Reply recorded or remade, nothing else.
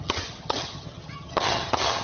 remade